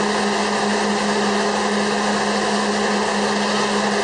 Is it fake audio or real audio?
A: real